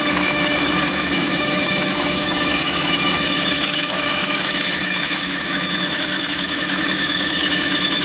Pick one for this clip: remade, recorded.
remade